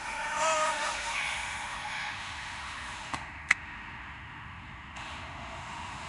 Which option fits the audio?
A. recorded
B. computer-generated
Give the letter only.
B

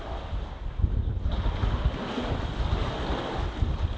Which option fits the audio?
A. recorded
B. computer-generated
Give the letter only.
A